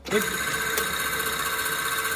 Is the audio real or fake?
real